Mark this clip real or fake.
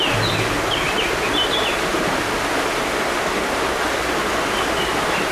real